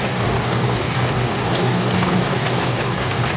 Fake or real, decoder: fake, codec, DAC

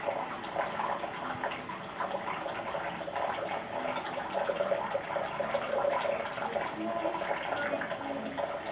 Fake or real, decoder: real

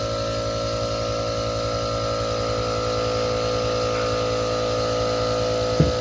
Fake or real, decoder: real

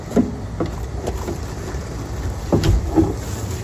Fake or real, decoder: real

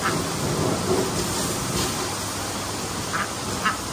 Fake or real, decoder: real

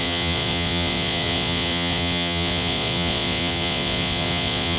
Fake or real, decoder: fake, vocoder, Vocos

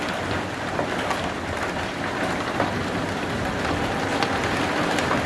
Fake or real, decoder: real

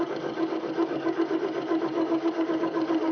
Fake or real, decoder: fake, codec, DAC